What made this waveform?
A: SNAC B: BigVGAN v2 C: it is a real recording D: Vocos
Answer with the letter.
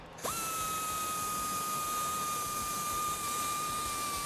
C